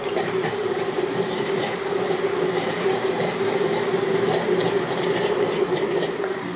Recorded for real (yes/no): no